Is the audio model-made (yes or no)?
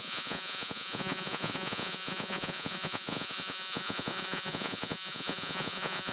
yes